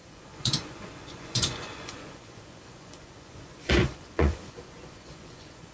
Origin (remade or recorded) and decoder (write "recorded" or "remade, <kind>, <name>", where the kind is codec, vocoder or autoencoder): remade, vocoder, Vocos